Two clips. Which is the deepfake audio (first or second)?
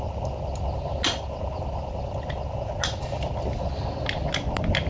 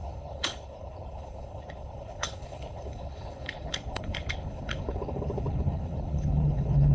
second